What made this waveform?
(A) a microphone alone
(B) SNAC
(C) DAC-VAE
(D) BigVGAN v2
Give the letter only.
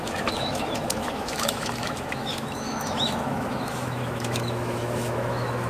C